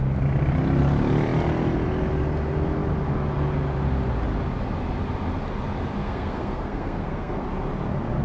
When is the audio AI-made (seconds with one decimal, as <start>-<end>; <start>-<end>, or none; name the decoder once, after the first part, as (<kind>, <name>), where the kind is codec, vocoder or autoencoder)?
6.0-7.5 (codec, SNAC)